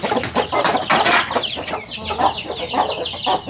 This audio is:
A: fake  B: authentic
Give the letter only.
B